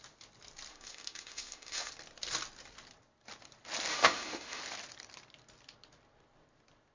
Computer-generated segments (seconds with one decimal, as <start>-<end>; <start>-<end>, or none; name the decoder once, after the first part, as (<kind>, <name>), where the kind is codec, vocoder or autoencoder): 0.7-1.9 (autoencoder, DAC-VAE); 3.9-4.6

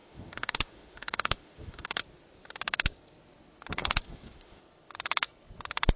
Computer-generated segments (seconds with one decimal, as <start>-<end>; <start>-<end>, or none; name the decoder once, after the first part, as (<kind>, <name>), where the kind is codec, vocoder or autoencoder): 0.0-2.0 (autoencoder, DAC-VAE); 3.8-4.6

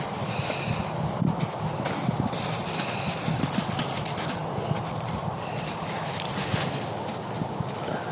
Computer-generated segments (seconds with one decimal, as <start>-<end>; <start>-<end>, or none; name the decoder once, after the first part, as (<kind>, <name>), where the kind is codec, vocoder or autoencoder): none

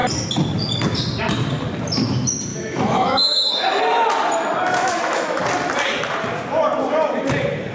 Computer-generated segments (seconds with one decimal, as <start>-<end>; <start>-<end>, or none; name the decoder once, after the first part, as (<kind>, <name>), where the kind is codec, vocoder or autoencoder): 2.5-3.8 (autoencoder, DAC-VAE); 4.8-5.4

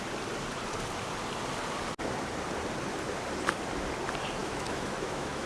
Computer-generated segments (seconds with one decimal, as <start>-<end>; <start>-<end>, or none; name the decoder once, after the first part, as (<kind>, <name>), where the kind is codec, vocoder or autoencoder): 4.4-5.5 (autoencoder, DAC-VAE)

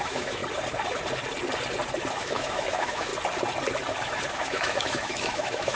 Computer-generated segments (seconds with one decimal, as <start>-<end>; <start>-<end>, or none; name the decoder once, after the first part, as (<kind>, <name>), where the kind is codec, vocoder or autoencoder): 0.0-0.4 (autoencoder, DAC-VAE); 2.1-3.1; 4.3-5.7

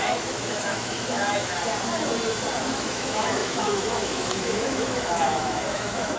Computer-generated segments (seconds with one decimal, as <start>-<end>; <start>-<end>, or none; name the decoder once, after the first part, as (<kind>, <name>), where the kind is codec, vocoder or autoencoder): 0.0-1.5 (autoencoder, DAC-VAE); 2.6-6.2